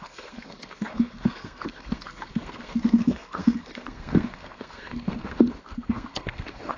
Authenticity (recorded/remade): remade